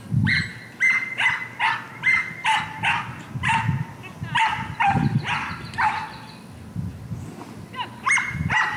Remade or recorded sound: recorded